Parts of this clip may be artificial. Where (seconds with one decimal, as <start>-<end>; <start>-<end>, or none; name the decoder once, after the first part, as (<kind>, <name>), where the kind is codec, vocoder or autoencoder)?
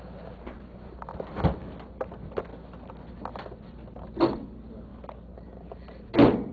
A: none